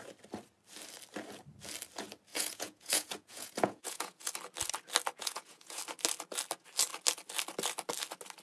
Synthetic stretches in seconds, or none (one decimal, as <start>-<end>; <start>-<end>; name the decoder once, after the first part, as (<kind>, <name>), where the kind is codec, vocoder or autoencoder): 2.3-4.3 (vocoder, Vocos); 5.2-5.8